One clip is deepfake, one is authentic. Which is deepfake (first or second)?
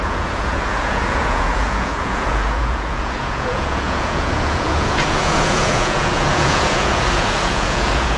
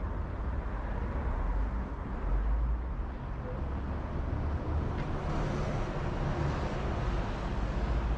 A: first